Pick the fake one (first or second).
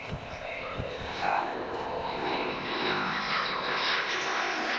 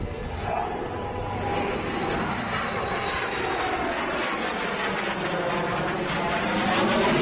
first